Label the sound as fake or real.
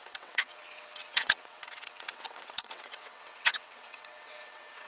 fake